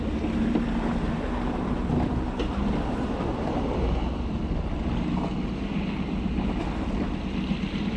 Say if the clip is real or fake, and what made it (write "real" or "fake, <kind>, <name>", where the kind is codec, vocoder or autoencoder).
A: real